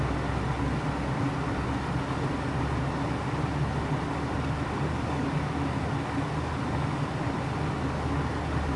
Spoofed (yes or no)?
no